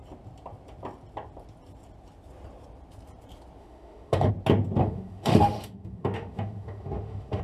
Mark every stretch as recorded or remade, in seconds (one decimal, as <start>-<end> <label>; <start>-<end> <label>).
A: 0.0-3.6 recorded; 3.6-4.3 remade; 4.3-4.8 recorded; 4.8-7.4 remade